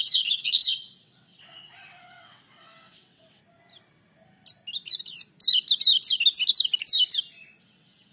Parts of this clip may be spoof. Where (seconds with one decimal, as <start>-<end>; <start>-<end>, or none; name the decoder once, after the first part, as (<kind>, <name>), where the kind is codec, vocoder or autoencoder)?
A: 0.0-3.4 (vocoder, WaveNeXt); 7.6-8.1